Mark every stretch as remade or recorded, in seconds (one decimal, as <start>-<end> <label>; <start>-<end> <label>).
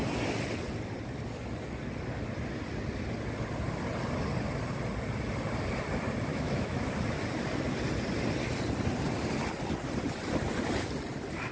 0.0-6.3 recorded; 6.3-6.9 remade; 6.9-11.5 recorded